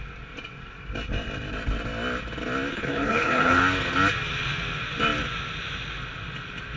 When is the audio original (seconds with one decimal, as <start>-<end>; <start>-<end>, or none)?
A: 0.0-2.7; 3.6-6.8